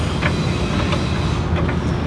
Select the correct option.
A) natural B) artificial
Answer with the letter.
A